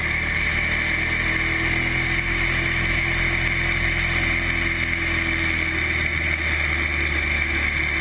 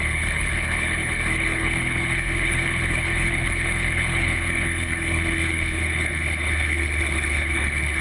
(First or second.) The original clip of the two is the first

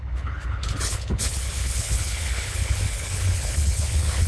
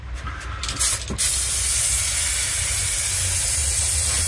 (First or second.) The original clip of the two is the second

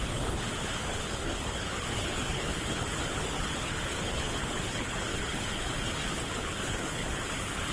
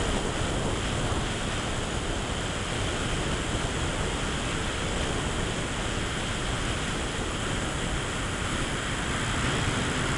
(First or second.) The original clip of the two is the second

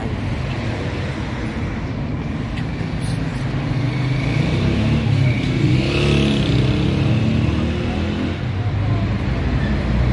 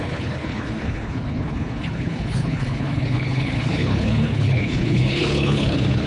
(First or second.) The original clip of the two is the first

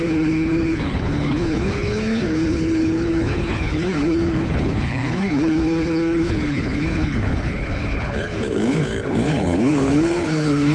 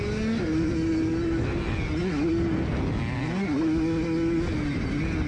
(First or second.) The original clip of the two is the second